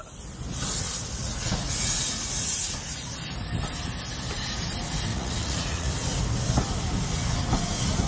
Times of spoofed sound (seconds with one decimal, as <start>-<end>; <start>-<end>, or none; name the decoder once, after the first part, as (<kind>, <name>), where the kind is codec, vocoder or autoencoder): 1.2-2.8 (vocoder, Vocos); 5.1-5.9